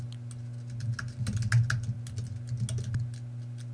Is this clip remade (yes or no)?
no